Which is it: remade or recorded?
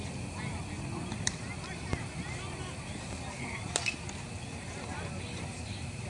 recorded